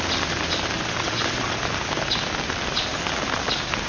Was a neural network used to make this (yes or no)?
no